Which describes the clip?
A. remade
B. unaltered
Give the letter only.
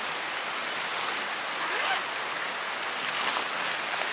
B